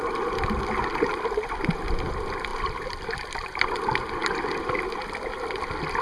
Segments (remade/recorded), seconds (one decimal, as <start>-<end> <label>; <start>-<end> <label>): 0.0-6.0 recorded